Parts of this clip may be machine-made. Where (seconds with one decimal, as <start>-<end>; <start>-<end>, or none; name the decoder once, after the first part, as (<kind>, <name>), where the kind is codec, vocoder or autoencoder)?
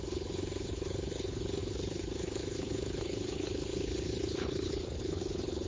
0.0-5.7 (codec, HILCodec)